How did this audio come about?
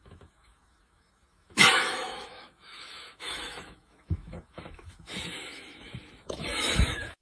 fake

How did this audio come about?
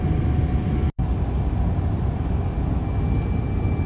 real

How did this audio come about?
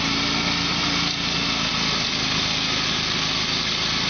real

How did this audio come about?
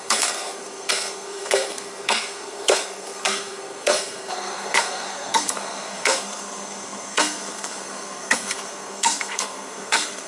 fake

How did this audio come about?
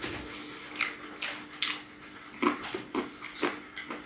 real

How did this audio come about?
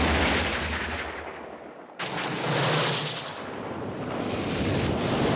real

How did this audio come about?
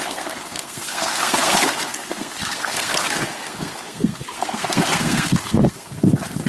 fake